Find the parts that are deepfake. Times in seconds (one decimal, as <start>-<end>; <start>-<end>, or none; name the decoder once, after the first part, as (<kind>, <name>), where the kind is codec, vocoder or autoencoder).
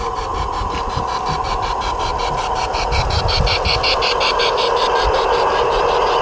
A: none